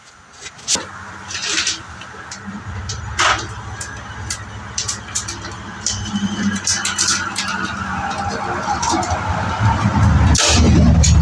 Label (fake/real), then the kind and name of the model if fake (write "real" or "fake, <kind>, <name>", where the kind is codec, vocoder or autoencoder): real